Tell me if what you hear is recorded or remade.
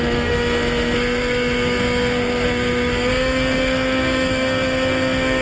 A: remade